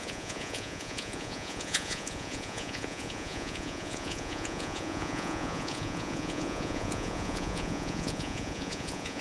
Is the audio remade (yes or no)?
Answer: yes